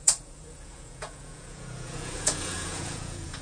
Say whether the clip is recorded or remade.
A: remade